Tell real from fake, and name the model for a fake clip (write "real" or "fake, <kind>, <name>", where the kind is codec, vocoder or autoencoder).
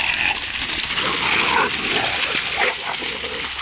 real